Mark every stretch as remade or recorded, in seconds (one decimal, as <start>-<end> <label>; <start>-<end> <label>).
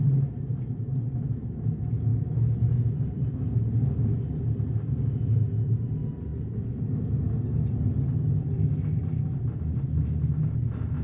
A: 0.0-11.0 recorded